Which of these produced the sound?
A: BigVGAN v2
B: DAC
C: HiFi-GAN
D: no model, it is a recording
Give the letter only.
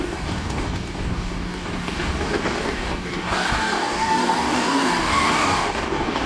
B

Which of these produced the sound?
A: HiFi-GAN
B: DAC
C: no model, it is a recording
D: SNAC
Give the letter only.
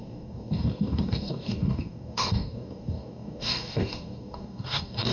B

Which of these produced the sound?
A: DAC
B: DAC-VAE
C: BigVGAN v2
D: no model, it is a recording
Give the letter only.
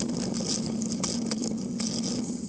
D